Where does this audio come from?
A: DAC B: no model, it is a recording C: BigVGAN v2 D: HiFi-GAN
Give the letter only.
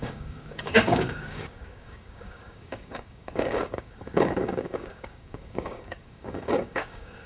A